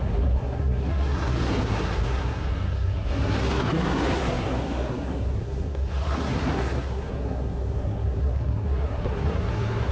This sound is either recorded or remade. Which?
remade